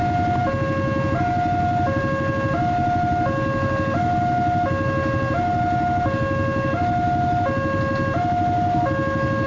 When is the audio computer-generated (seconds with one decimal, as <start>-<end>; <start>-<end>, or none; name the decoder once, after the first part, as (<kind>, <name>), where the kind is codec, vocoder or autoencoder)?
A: none